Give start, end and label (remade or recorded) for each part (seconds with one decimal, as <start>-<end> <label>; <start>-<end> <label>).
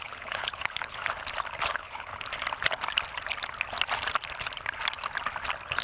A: 0.0-1.0 remade; 1.0-1.7 recorded; 1.7-2.1 remade; 2.1-5.8 recorded